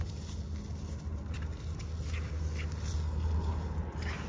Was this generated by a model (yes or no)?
no